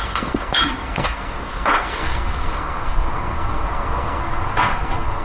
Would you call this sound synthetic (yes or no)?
yes